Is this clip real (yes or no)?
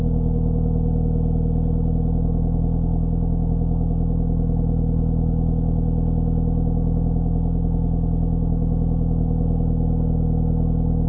yes